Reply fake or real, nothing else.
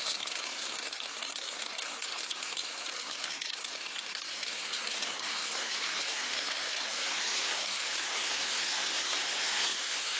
fake